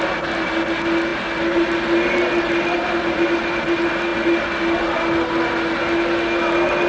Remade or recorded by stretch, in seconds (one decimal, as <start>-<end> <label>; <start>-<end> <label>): 0.0-6.9 recorded